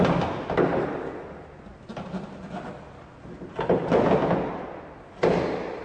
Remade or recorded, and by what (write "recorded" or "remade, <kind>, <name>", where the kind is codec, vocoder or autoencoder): recorded